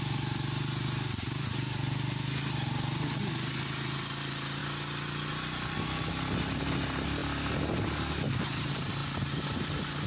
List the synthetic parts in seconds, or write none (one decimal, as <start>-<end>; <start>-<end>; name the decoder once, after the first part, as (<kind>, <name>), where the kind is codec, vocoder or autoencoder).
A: none